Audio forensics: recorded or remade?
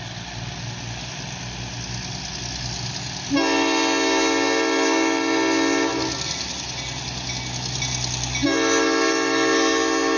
recorded